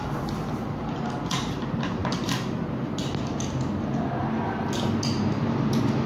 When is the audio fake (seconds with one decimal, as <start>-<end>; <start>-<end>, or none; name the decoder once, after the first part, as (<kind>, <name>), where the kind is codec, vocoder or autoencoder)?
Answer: none